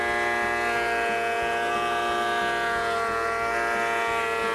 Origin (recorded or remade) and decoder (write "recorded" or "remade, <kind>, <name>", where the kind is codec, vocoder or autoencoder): recorded